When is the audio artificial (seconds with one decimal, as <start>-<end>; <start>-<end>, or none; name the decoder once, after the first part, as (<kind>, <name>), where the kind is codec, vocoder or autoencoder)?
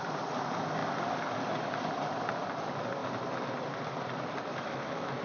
4.5-5.2 (autoencoder, DAC-VAE)